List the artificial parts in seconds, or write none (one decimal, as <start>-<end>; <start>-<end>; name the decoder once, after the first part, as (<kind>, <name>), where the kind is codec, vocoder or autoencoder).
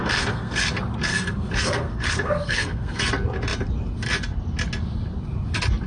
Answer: 0.0-0.6 (codec, SNAC); 1.1-3.0